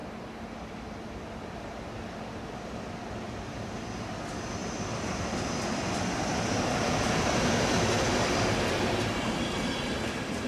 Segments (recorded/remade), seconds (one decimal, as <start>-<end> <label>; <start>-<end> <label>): 0.0-10.5 recorded